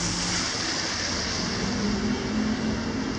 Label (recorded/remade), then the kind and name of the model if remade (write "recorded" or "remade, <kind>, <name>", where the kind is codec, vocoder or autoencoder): recorded